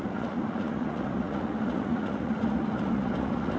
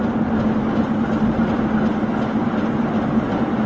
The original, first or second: second